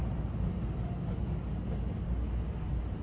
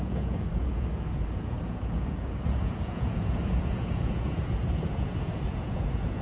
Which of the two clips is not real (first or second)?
second